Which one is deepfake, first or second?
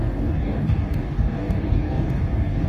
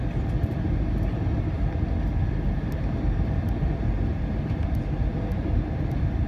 first